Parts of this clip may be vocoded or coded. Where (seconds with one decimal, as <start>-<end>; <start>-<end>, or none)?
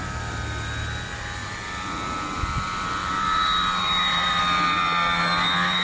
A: 3.0-4.4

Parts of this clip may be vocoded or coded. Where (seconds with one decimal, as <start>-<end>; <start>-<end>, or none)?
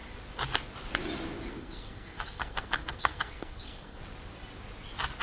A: 1.5-4.0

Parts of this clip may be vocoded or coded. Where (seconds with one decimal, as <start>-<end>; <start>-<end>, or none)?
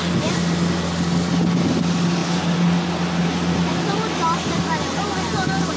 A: none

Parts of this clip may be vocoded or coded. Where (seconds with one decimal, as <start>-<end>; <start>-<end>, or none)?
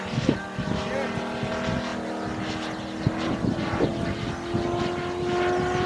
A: none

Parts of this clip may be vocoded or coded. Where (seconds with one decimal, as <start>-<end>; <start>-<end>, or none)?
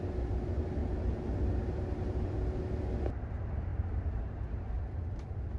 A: 3.7-4.8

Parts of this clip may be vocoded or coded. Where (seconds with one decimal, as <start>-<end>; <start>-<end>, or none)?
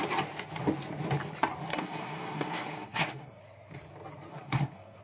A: 1.7-3.4; 4.3-5.0